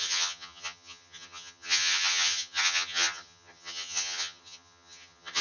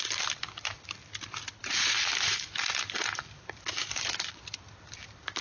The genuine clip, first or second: second